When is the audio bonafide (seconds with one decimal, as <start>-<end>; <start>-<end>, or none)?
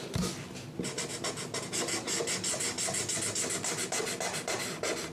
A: 0.0-5.1